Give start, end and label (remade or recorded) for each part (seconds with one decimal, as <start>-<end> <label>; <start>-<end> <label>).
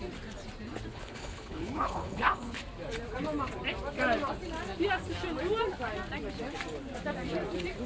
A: 0.0-0.9 recorded; 0.9-2.6 remade; 2.6-7.9 recorded